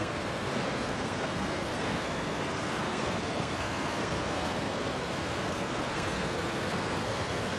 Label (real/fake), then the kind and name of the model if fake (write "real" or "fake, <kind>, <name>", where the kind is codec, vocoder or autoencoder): fake, codec, SNAC